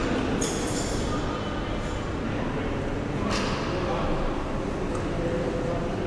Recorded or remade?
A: recorded